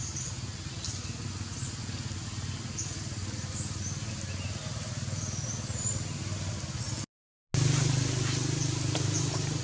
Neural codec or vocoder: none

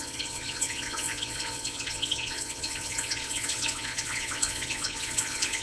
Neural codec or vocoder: vocoder, Vocos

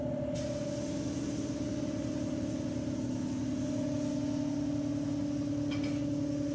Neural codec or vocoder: none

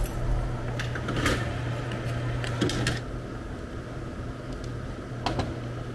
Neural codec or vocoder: none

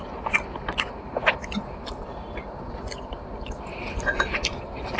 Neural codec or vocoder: none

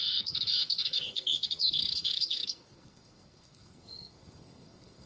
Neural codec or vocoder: codec, SNAC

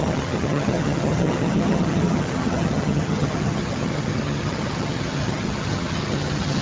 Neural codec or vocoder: vocoder, HiFi-GAN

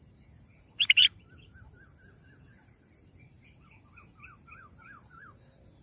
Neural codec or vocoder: vocoder, BigVGAN v2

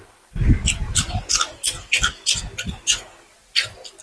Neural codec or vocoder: none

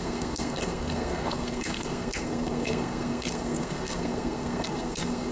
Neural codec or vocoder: codec, SNAC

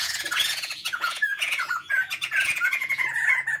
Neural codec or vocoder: vocoder, Vocos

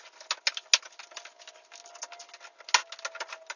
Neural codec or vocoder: none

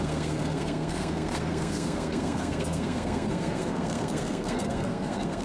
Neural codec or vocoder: codec, SNAC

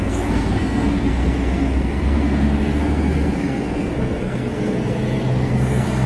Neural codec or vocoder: codec, SNAC